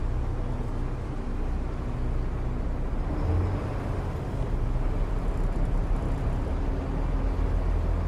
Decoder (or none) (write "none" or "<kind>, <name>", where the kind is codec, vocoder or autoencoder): none